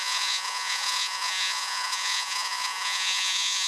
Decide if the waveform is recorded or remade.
remade